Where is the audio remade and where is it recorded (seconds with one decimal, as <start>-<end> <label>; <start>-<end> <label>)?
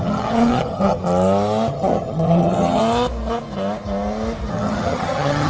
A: 0.0-1.0 remade; 1.0-1.7 recorded; 1.7-2.8 remade; 2.8-4.5 recorded; 4.5-5.5 remade